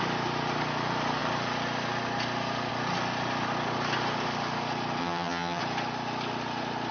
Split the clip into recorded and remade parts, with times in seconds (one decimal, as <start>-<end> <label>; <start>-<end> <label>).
0.0-5.0 recorded; 5.0-5.6 remade; 5.6-6.9 recorded